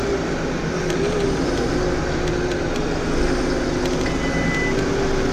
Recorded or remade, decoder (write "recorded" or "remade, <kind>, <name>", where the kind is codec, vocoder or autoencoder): recorded